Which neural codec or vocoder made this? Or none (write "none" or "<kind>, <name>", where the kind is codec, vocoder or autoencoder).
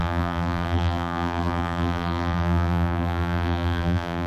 vocoder, BigVGAN v2